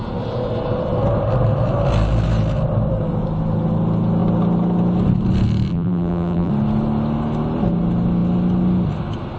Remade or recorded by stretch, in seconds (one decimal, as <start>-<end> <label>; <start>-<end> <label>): 0.0-5.7 recorded; 5.7-6.5 remade; 6.5-9.4 recorded